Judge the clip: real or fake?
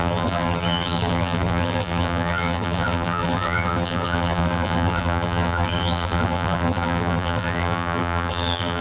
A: fake